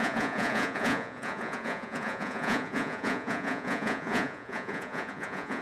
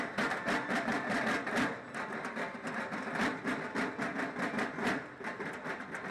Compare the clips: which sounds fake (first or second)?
first